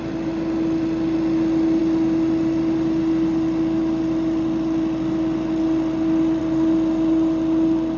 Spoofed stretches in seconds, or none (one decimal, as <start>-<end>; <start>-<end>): none